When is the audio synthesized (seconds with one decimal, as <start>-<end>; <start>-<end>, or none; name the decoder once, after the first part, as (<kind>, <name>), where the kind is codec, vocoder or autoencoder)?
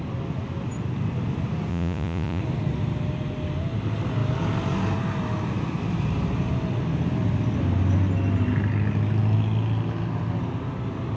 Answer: 1.7-2.4 (vocoder, Vocos)